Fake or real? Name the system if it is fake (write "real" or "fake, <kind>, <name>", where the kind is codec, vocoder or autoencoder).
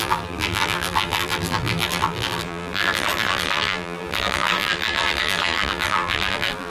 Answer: fake, vocoder, BigVGAN v2